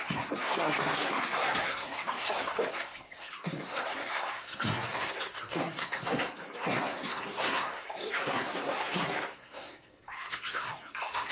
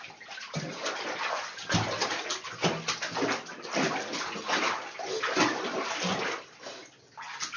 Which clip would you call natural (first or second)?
second